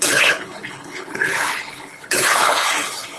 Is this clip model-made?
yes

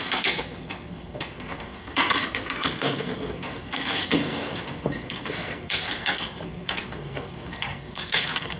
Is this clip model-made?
yes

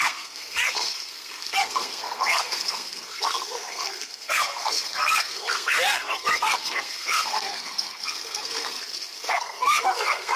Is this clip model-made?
yes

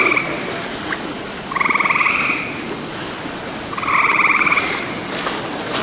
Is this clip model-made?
yes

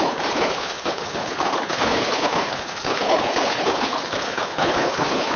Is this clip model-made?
yes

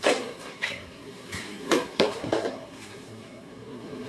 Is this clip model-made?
yes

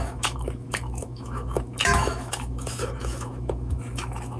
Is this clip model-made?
yes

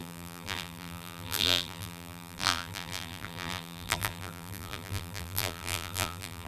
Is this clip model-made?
yes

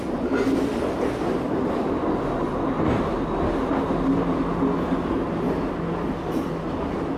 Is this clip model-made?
no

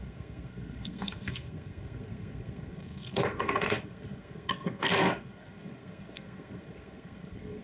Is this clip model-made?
yes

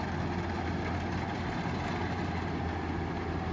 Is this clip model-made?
no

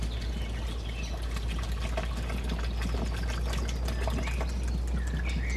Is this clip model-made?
no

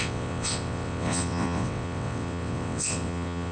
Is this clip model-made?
yes